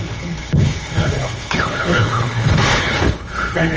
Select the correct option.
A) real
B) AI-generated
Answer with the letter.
B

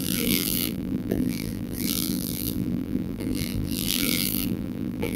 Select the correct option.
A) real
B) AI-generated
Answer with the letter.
B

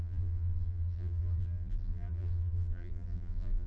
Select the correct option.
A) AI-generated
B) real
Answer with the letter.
A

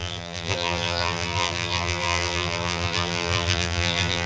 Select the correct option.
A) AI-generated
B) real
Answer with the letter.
A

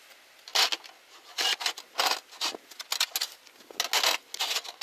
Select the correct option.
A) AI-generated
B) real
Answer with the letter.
B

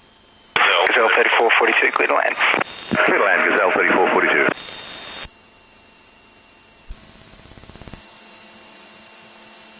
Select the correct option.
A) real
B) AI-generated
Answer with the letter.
A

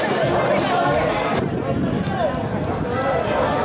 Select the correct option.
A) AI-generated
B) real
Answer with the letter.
B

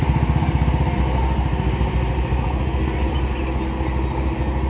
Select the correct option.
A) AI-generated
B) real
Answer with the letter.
B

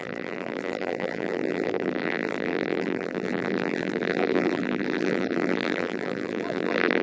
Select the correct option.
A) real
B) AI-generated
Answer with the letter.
B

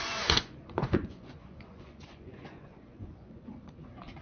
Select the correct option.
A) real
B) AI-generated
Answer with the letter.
B